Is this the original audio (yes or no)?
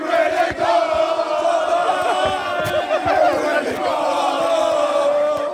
yes